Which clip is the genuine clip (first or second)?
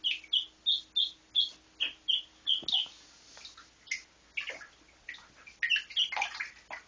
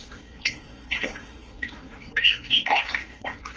first